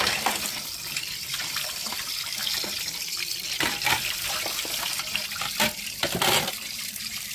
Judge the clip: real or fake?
fake